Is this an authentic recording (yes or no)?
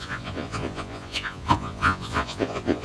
no